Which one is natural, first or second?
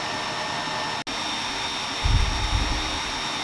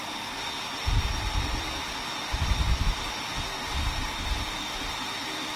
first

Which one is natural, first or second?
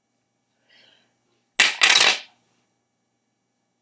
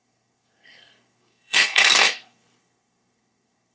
first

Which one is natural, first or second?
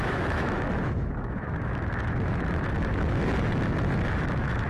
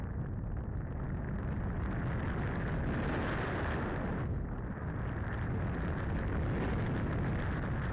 second